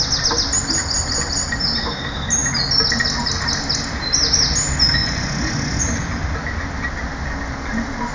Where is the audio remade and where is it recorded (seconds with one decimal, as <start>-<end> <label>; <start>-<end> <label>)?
0.0-5.0 recorded; 5.0-5.8 remade; 5.8-8.1 recorded